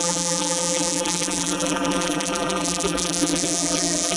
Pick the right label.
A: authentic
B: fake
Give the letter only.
B